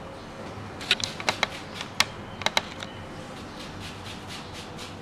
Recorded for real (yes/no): yes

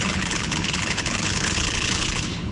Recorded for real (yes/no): no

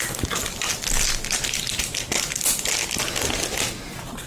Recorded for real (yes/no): yes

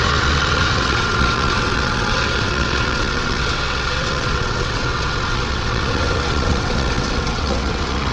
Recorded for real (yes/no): no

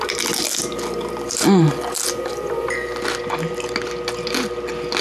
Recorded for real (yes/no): yes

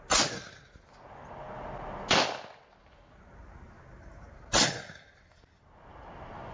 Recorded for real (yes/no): yes